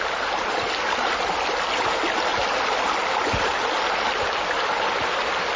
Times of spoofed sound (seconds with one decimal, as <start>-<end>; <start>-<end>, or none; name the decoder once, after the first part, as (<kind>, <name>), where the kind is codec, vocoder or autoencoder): none